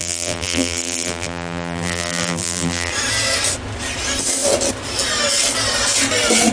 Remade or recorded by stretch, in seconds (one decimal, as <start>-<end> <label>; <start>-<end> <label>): 0.0-2.9 remade; 2.9-6.5 recorded